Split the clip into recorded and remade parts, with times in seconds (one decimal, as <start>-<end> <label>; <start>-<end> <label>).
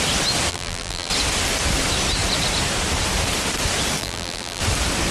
0.0-0.5 recorded; 0.5-1.1 remade; 1.1-4.0 recorded; 4.0-4.6 remade; 4.6-5.1 recorded